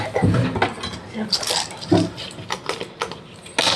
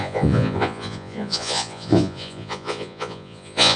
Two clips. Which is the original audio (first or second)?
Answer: first